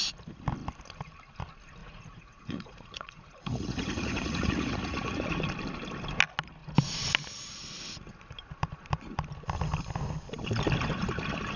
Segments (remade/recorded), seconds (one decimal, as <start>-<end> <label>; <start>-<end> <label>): 0.0-1.8 recorded; 1.8-5.4 remade; 5.4-11.6 recorded